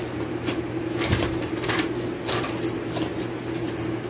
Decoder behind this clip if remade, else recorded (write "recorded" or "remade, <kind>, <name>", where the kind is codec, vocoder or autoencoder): recorded